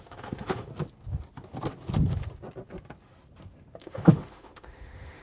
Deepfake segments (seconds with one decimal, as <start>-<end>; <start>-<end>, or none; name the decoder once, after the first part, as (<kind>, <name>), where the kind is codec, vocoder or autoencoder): 0.0-0.7 (autoencoder, DAC-VAE); 3.8-5.2